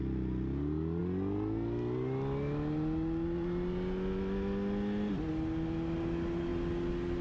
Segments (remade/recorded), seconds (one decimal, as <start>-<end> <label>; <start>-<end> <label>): 0.0-7.2 recorded